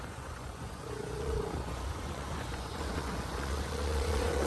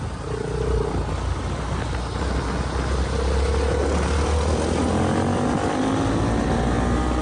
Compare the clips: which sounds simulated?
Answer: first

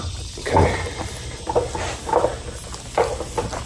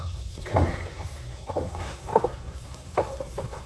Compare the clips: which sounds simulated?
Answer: second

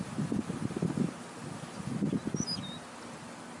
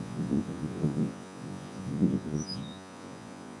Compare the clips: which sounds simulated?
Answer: second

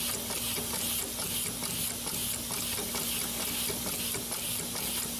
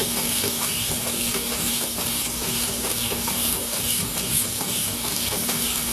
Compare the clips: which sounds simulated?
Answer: second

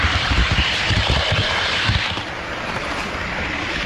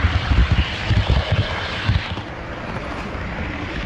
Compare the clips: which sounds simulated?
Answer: first